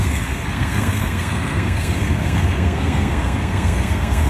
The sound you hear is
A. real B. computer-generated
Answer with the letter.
B